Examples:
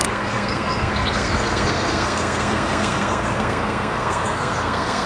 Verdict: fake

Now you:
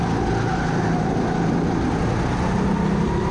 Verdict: real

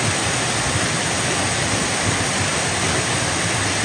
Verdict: real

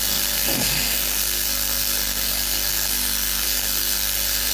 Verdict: fake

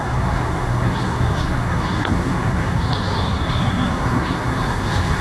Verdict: fake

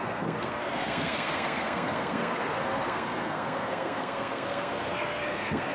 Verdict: fake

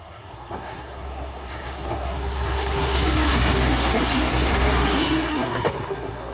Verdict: fake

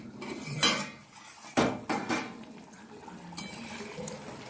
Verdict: real